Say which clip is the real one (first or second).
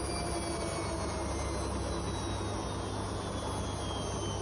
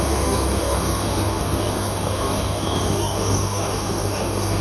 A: first